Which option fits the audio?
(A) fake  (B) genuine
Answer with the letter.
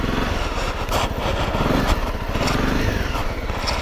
B